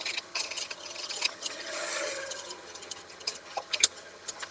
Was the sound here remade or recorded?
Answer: remade